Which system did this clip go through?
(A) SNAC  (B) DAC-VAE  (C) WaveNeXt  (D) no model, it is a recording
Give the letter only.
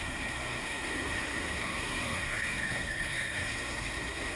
A